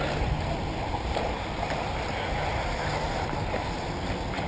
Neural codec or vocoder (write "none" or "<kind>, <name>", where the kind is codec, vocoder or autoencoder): none